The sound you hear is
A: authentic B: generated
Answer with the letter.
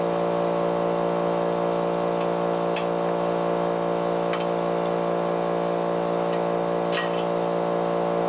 A